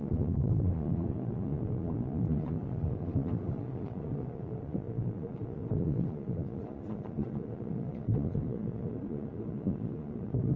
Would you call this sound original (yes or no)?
no